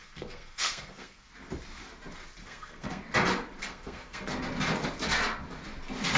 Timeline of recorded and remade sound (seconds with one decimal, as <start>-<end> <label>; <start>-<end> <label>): 0.0-1.3 remade; 1.3-2.4 recorded; 2.4-3.0 remade; 3.0-3.6 recorded; 3.6-4.2 remade; 4.2-6.2 recorded